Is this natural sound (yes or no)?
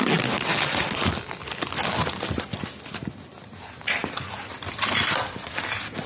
yes